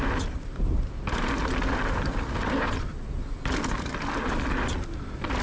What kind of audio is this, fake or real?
real